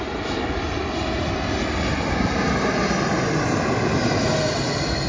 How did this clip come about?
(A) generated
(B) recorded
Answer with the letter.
B